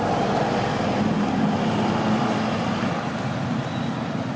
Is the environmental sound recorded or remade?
recorded